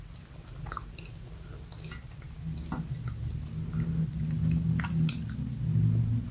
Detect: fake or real real